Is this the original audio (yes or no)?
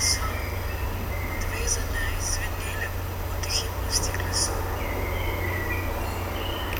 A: yes